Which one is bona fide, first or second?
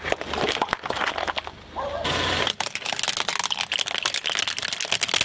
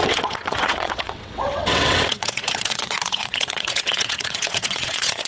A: first